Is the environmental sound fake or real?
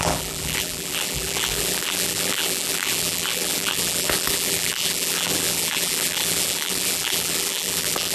fake